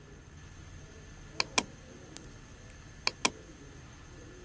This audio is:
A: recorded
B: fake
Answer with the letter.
A